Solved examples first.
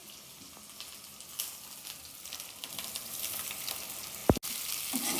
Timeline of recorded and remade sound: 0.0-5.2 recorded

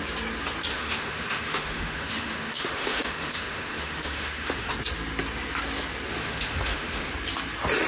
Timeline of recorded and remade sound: 0.0-0.7 recorded; 0.7-4.7 remade; 4.7-6.2 recorded; 6.2-7.1 remade; 7.1-7.9 recorded